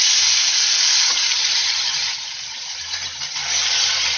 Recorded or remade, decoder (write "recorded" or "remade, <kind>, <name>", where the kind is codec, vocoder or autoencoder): remade, vocoder, BigVGAN v2